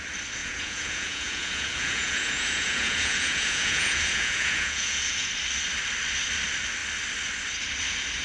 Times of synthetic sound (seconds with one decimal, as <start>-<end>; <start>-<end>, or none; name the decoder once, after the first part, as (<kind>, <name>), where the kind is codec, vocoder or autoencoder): 0.4-5.3 (vocoder, Vocos)